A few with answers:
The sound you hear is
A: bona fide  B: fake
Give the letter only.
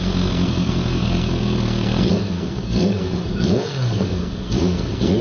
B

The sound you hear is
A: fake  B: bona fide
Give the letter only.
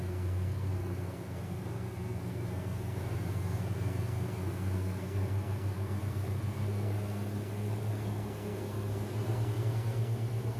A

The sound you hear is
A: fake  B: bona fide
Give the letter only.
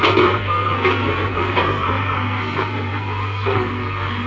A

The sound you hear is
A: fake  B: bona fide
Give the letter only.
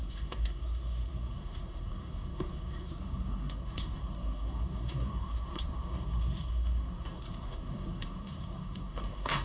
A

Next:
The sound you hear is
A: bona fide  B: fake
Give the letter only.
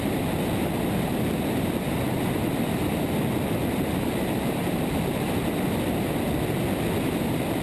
A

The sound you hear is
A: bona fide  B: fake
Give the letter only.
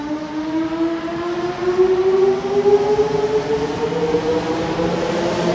A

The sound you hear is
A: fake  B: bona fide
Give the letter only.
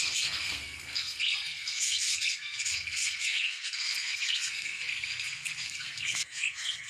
A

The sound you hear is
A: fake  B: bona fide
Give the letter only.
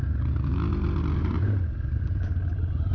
B